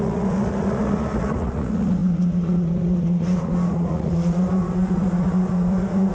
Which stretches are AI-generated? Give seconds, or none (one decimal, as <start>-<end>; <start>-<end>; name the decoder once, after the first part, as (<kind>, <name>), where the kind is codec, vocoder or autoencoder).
0.0-6.1 (vocoder, Vocos)

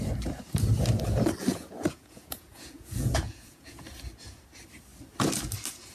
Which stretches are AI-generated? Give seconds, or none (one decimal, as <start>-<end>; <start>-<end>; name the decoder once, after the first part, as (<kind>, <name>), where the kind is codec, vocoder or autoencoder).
1.5-3.8 (vocoder, Vocos)

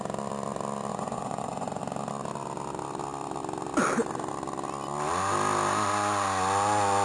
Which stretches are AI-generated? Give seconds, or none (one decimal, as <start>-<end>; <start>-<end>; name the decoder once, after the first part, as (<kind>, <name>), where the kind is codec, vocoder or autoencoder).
0.9-1.8 (vocoder, Vocos)

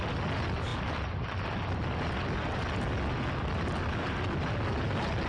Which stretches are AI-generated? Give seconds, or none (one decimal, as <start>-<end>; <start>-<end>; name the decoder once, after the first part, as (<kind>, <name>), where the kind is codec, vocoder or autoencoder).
none

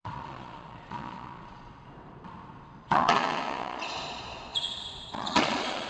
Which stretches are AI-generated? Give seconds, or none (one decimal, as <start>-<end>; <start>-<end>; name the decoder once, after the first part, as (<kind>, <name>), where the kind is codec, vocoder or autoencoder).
0.0-1.7 (vocoder, Vocos); 2.8-5.9

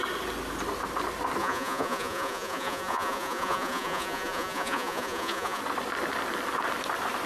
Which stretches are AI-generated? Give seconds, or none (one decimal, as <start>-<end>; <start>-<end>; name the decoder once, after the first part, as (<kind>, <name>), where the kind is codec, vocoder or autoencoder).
1.4-5.6 (vocoder, Vocos)

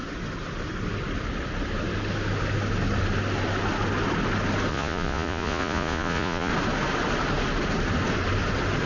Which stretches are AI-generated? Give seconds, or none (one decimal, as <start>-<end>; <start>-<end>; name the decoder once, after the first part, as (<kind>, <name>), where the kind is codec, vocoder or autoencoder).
4.7-6.5 (vocoder, Vocos)